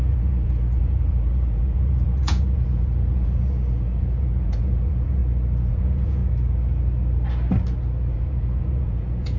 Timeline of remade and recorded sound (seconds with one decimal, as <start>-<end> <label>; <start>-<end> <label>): 0.0-5.2 remade; 5.2-5.7 recorded; 5.7-6.2 remade; 6.2-8.1 recorded; 8.1-9.4 remade